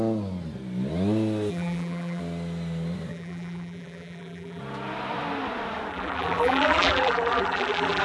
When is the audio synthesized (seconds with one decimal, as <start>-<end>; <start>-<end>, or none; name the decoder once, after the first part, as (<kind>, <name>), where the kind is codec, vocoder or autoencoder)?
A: 1.5-2.2 (vocoder, BigVGAN v2); 3.1-4.6; 5.9-8.0